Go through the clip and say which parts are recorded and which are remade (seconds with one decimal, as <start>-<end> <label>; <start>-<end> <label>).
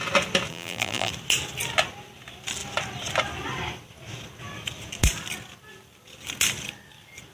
0.0-0.5 recorded; 0.5-1.1 remade; 1.1-7.3 recorded